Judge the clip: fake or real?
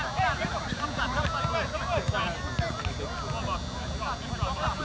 real